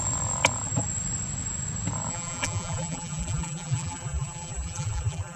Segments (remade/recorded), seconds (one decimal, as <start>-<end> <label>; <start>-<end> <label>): 0.0-2.1 recorded; 2.1-5.4 remade

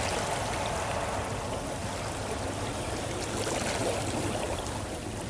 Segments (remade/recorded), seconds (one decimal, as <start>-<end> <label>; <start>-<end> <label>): 0.0-3.8 recorded; 3.8-4.8 remade; 4.8-5.3 recorded

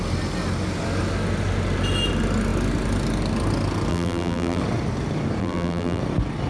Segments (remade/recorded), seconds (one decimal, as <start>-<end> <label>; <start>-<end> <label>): 0.0-3.9 recorded; 3.9-4.6 remade; 4.6-5.4 recorded; 5.4-6.0 remade; 6.0-6.5 recorded